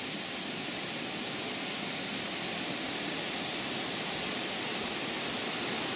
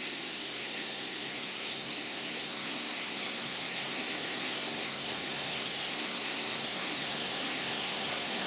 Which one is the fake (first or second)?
second